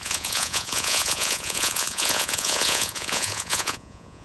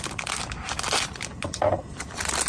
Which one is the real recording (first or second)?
second